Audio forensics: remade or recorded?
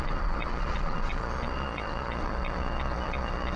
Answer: remade